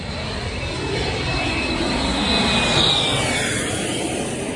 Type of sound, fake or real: real